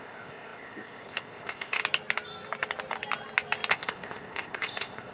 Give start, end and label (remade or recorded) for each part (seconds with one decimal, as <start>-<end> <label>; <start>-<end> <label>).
0.0-1.8 remade; 1.8-3.7 recorded; 3.7-5.1 remade